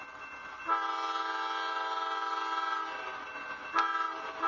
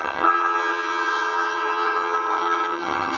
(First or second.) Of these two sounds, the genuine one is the first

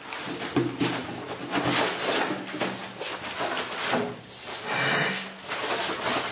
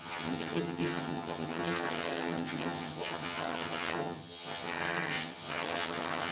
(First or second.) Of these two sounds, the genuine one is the first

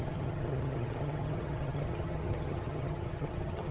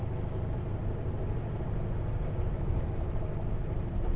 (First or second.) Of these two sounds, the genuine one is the second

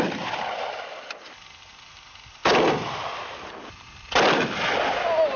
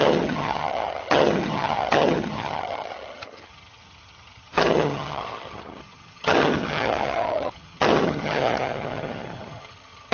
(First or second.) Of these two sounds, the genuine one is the first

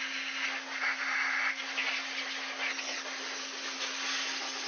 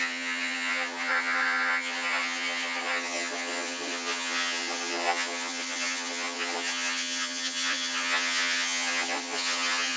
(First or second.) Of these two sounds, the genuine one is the first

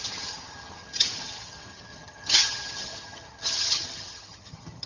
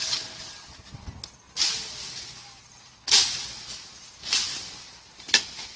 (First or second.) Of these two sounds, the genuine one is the second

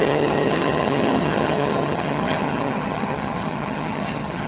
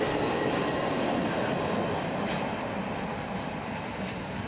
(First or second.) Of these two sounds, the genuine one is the second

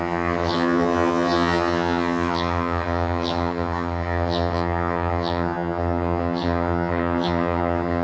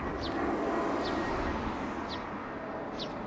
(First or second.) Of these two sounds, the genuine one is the second